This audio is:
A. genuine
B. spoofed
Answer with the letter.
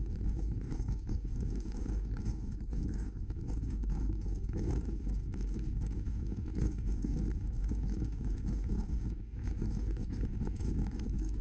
B